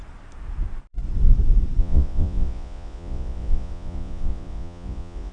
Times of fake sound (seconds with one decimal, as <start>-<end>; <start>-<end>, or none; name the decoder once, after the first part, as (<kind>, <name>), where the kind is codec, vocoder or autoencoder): 1.8-5.3 (vocoder, Vocos)